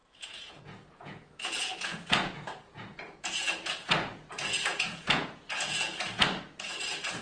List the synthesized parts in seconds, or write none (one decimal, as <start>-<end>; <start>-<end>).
0.0-7.2